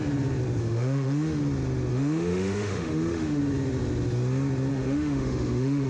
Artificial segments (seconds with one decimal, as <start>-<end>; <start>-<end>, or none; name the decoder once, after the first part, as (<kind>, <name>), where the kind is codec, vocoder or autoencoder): 0.6-1.4 (autoencoder, DAC-VAE); 1.9-3.4; 4.7-5.9

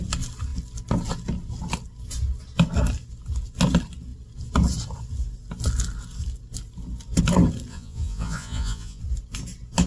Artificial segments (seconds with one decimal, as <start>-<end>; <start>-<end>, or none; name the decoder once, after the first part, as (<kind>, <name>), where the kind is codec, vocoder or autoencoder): 7.7-9.0 (vocoder, Vocos)

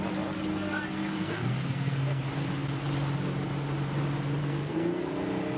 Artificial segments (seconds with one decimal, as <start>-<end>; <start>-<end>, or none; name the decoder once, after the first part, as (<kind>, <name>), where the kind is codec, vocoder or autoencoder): 0.5-2.2 (codec, SNAC); 4.4-5.0

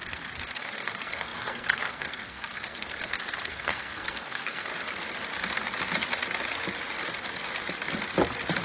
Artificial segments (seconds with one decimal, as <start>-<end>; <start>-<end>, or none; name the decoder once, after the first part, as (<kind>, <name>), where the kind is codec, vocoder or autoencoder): 0.0-4.7 (codec, SNAC)

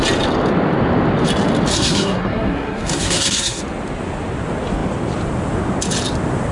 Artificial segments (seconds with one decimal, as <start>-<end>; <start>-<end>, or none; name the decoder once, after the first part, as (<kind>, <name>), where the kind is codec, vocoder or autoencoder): 1.7-3.6 (codec, SNAC)

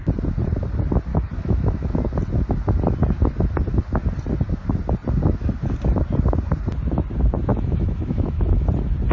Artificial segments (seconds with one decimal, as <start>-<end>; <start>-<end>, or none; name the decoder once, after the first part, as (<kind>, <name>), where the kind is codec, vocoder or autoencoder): 1.1-1.9 (autoencoder, DAC-VAE); 7.5-8.7